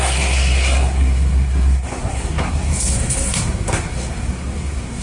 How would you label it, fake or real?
fake